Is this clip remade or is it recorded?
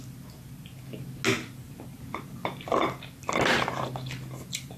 recorded